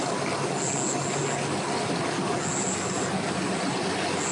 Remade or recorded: recorded